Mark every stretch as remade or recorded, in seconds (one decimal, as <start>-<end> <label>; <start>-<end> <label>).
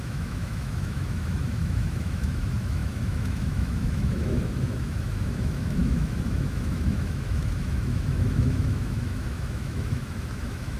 0.0-10.8 remade